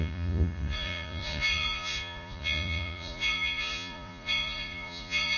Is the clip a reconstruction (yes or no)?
yes